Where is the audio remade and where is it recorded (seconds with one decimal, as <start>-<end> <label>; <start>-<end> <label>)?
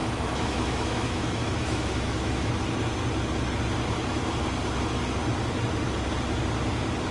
0.0-2.5 remade; 2.5-7.1 recorded